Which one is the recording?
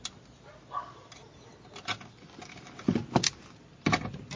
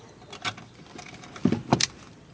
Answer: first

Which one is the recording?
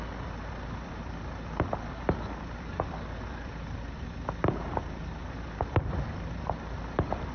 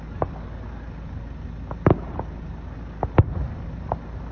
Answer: second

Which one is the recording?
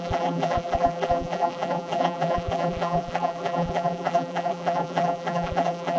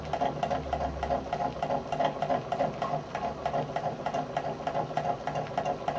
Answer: second